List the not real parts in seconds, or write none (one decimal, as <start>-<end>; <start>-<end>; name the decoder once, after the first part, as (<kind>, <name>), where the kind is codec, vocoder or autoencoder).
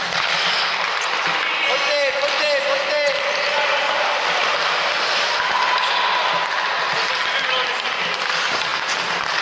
none